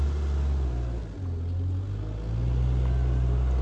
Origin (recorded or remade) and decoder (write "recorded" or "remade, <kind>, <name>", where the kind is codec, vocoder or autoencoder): recorded